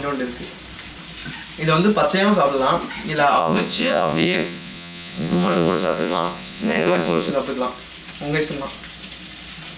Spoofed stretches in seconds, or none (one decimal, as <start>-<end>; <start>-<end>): 3.4-7.3